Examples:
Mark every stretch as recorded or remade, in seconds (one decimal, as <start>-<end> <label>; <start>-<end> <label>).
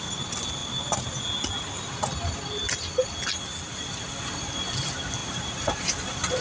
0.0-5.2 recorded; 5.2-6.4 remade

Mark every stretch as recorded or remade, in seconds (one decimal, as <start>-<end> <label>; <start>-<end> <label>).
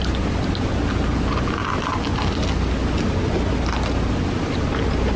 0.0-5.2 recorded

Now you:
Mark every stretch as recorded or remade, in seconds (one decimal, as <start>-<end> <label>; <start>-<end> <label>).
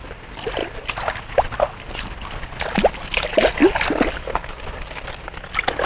0.0-5.9 recorded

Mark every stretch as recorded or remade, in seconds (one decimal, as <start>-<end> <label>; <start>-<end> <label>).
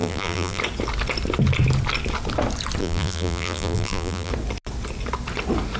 0.0-0.6 remade; 0.6-2.8 recorded; 2.8-4.3 remade; 4.3-5.8 recorded